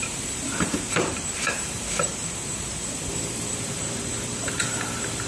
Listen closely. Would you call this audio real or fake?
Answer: fake